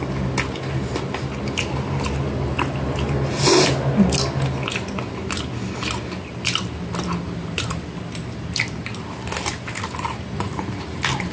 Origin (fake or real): real